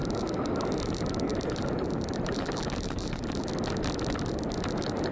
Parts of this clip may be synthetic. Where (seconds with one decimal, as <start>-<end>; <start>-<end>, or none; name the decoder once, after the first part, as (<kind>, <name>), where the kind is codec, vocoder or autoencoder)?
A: 1.3-3.5 (vocoder, BigVGAN v2)